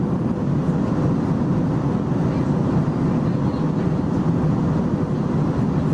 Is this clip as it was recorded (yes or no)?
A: yes